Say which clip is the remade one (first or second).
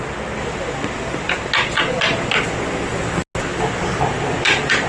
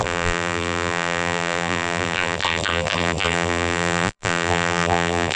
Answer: second